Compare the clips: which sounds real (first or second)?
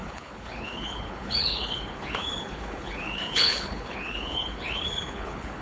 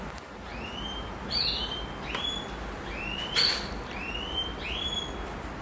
second